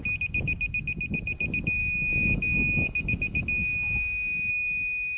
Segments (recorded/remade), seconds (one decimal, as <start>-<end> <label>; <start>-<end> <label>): 0.0-1.8 recorded; 1.8-4.5 remade; 4.5-5.2 recorded

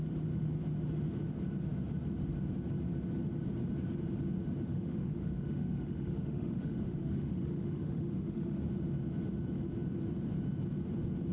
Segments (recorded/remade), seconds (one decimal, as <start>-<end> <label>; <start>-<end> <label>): 0.0-4.7 recorded; 4.7-8.6 remade; 8.6-11.3 recorded

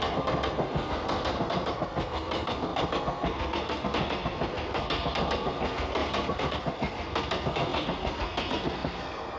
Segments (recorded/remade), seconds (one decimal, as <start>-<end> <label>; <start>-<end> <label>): 0.0-9.4 remade

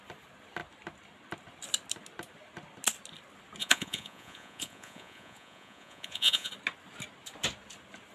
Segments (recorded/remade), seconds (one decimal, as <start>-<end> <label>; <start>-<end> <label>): 0.0-3.6 recorded; 3.6-6.5 remade; 6.5-8.1 recorded

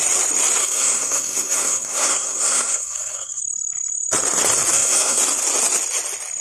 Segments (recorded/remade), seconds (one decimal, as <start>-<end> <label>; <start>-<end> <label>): 0.0-0.6 recorded; 0.6-3.4 remade; 3.4-4.7 recorded; 4.7-5.2 remade; 5.2-6.4 recorded

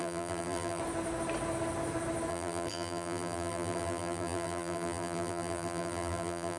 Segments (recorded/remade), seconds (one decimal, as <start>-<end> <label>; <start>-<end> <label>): 0.0-0.8 remade; 0.8-2.3 recorded; 2.3-6.6 remade

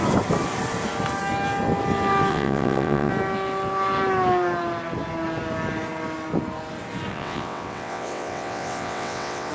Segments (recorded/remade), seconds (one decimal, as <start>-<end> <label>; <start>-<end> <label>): 0.0-2.3 recorded; 2.3-3.1 remade; 3.1-7.1 recorded; 7.1-9.5 remade